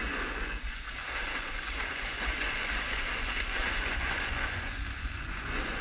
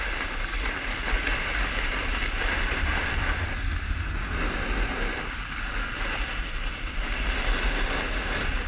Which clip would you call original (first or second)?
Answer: second